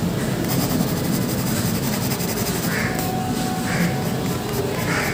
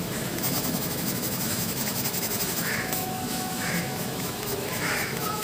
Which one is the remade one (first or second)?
second